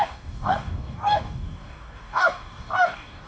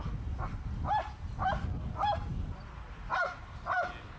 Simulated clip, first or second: first